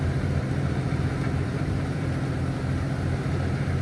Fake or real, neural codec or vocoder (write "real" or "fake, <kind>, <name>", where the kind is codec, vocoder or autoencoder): fake, vocoder, BigVGAN v2